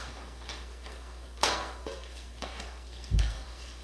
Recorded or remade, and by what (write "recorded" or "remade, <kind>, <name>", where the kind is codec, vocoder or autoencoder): remade, codec, SNAC